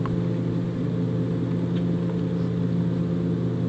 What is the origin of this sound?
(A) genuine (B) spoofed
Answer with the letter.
A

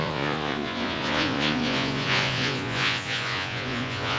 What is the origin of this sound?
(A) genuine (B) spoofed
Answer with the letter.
B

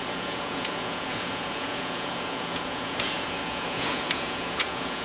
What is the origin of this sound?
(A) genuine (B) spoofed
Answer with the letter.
B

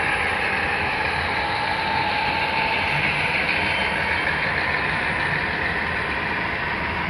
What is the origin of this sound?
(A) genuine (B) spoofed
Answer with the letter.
A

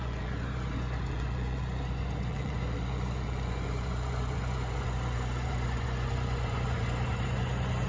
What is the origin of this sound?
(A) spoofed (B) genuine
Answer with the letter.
A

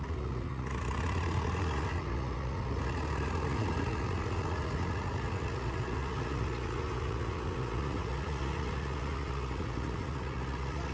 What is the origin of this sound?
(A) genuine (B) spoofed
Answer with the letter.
B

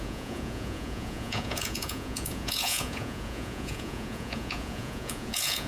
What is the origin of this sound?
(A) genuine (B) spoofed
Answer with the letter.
B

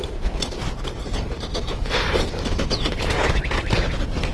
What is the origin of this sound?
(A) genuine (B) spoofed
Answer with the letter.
A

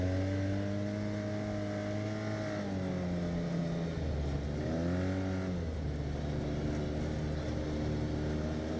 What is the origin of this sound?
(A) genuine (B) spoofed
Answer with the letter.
A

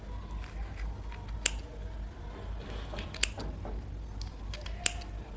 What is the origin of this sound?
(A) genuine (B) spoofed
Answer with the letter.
A